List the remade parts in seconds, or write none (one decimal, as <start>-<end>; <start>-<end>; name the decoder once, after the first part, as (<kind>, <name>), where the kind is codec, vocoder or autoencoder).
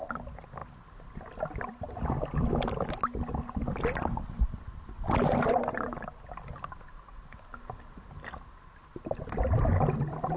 none